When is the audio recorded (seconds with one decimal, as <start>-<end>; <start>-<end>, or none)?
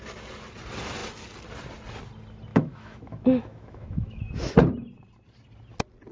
0.0-2.5; 4.2-6.1